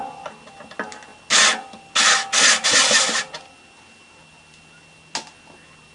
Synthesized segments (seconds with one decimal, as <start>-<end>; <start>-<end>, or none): none